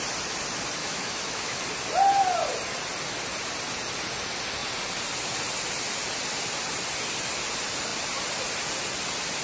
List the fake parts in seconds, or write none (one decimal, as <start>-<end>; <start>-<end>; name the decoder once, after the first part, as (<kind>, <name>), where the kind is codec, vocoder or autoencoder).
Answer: 0.8-1.6 (autoencoder, DAC-VAE)